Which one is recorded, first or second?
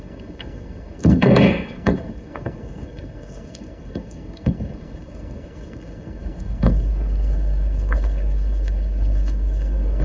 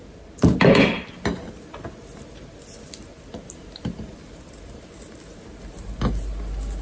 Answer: second